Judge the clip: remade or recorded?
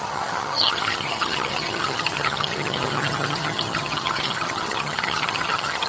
remade